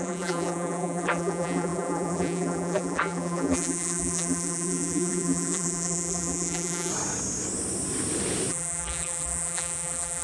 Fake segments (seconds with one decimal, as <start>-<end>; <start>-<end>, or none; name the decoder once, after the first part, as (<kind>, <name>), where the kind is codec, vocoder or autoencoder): 0.0-6.9 (vocoder, BigVGAN v2); 8.5-10.2